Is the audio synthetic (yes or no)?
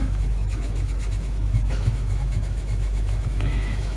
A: yes